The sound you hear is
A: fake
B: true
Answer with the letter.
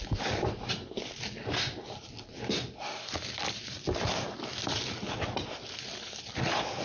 A